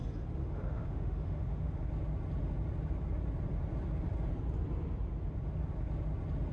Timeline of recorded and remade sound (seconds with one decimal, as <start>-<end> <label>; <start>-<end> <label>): 0.0-0.4 recorded; 0.4-1.8 remade; 1.8-6.5 recorded